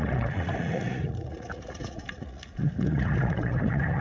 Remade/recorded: remade